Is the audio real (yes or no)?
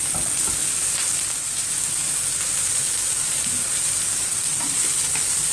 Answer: yes